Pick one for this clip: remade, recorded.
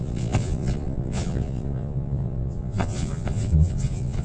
remade